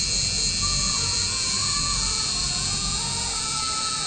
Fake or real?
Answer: fake